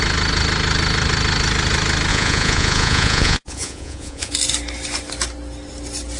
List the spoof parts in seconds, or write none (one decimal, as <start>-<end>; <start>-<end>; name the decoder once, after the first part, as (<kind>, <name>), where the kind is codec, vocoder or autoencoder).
2.1-4.3 (vocoder, Vocos)